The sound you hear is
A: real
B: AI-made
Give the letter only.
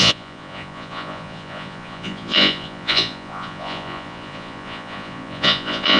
B